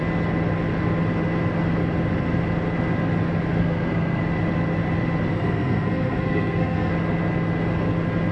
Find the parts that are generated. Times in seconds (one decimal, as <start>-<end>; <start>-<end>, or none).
3.6-4.2; 5.3-6.9